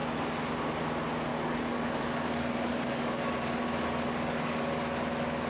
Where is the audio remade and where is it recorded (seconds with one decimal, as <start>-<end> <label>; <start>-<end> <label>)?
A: 0.0-1.3 recorded; 1.3-4.6 remade; 4.6-5.5 recorded